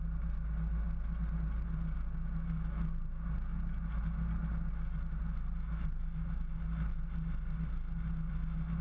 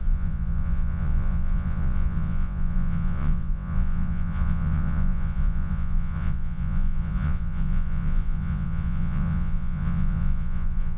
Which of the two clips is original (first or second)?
first